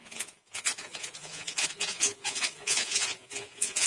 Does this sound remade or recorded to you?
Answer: remade